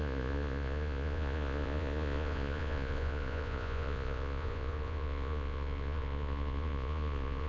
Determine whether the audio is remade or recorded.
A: remade